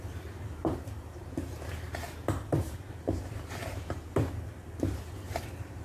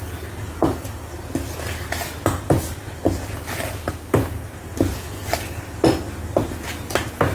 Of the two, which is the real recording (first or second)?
second